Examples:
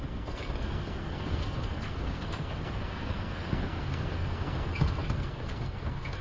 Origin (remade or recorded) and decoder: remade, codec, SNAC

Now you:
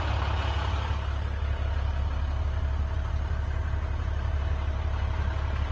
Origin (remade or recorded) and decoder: recorded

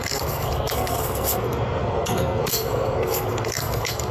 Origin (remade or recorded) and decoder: remade, codec, SNAC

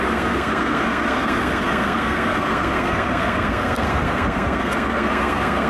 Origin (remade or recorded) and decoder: remade, codec, SNAC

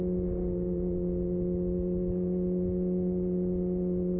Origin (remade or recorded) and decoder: recorded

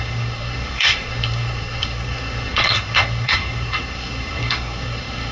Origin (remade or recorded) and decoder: remade, codec, SNAC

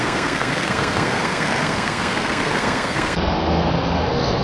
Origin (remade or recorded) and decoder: remade, codec, SNAC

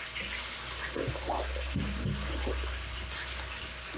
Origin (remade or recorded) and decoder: recorded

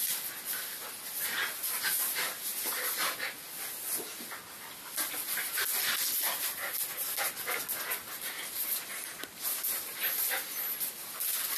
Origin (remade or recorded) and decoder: recorded